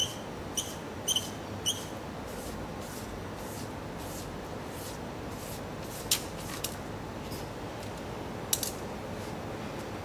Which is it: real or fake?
real